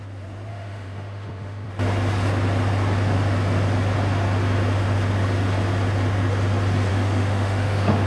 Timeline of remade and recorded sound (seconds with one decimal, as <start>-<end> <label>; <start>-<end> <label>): 0.0-0.5 recorded; 0.5-1.7 remade; 1.7-6.9 recorded; 6.9-8.1 remade